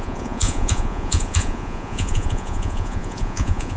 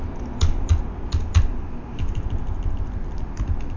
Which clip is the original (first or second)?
second